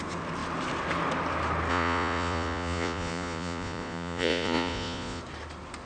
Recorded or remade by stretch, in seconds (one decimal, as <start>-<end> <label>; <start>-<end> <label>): 0.0-1.7 recorded; 1.7-5.2 remade; 5.2-5.9 recorded